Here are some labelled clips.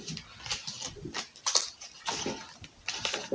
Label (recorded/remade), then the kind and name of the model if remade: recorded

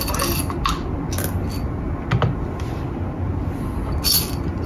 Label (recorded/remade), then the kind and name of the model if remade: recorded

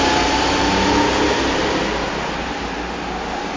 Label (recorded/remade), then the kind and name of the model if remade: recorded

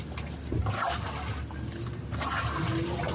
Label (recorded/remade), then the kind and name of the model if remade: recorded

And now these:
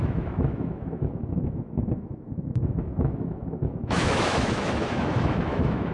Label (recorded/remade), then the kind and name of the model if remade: remade, autoencoder, DAC-VAE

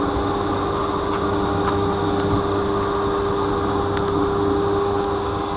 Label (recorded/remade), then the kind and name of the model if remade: recorded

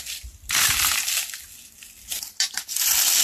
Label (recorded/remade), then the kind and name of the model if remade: recorded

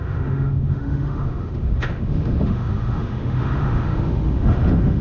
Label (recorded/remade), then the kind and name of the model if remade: remade, autoencoder, DAC-VAE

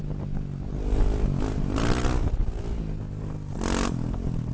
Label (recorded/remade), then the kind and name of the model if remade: recorded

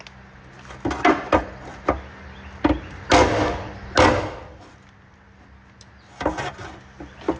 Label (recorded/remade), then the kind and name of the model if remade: recorded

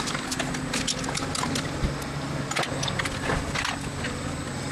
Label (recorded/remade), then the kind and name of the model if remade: recorded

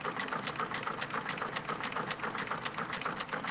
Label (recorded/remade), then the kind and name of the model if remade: recorded